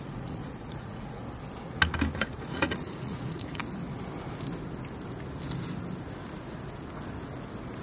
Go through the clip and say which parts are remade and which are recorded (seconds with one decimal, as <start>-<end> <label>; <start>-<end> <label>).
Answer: 0.0-1.2 remade; 1.2-2.5 recorded; 2.5-3.6 remade; 3.6-7.8 recorded